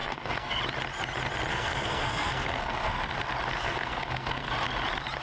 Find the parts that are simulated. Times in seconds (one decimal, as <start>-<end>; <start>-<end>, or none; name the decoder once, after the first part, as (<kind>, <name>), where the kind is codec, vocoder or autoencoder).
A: 0.0-0.6 (codec, SNAC); 1.5-3.0; 3.6-4.5